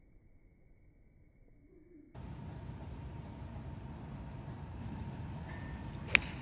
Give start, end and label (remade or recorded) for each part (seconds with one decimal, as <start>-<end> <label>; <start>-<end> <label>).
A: 0.0-6.4 recorded